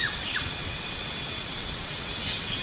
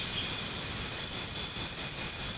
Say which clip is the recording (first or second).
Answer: second